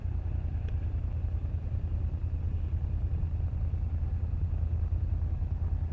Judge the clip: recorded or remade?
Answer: recorded